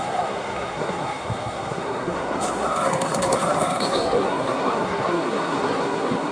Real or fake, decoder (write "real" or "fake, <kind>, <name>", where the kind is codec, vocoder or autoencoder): fake, codec, SNAC